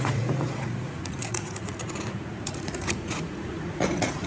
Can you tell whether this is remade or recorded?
remade